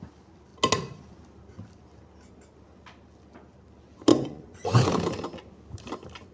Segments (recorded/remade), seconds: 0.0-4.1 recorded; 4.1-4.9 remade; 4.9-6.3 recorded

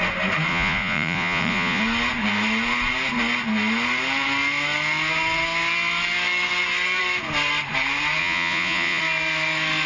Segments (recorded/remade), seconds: 0.0-0.5 recorded; 0.5-1.8 remade; 1.8-8.2 recorded; 8.2-9.0 remade; 9.0-9.9 recorded

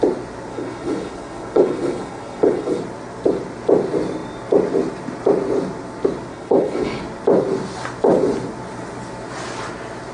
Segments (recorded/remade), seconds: 0.0-0.5 recorded; 0.5-2.8 remade; 2.8-6.3 recorded; 6.3-7.0 remade; 7.0-10.1 recorded

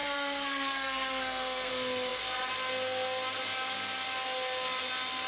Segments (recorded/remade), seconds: 0.0-1.7 remade; 1.7-5.3 recorded

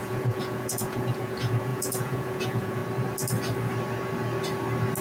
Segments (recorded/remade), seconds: 0.0-2.8 remade; 2.8-5.0 recorded

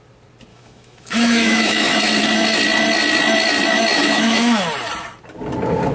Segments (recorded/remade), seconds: 0.0-0.5 recorded; 0.5-2.0 remade; 2.0-3.9 recorded; 3.9-4.6 remade; 4.6-5.9 recorded